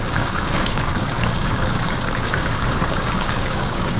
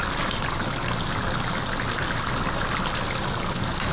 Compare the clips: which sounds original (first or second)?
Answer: second